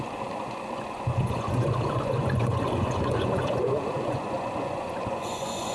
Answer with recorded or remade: remade